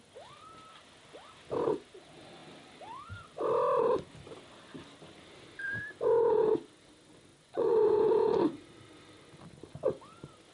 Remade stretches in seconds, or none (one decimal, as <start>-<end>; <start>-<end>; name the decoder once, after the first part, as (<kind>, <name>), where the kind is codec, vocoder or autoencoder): 7.3-8.1 (vocoder, Vocos)